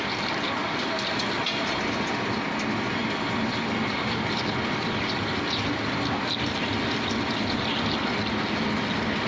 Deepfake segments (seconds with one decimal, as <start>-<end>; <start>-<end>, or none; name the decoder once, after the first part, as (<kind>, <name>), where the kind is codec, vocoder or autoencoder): none